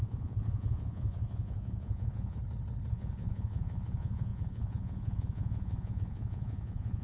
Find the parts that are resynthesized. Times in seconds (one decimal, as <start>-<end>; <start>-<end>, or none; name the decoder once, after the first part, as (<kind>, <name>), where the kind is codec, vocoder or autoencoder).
0.0-2.4 (vocoder, Vocos); 2.9-7.0